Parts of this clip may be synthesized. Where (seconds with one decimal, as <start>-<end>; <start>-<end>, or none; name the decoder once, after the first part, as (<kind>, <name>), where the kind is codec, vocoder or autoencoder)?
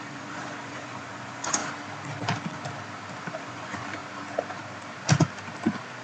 0.0-1.6 (vocoder, Vocos); 3.4-4.0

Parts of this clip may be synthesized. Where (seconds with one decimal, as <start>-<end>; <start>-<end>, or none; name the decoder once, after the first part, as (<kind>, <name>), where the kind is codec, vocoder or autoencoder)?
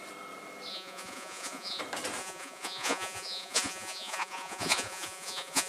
0.7-1.8 (vocoder, Vocos); 2.2-5.7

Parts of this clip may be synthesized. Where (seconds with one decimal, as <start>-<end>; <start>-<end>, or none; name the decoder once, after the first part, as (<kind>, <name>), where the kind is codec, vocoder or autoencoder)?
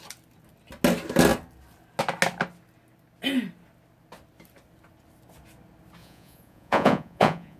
6.0-7.6 (vocoder, Vocos)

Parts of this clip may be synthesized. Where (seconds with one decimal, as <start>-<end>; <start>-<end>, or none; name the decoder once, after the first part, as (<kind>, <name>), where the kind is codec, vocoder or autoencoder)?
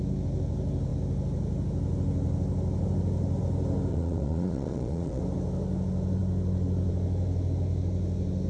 3.9-5.2 (vocoder, Vocos)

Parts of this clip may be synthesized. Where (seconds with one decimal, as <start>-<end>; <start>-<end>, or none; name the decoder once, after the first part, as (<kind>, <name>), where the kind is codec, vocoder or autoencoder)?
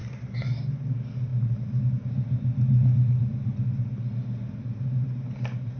none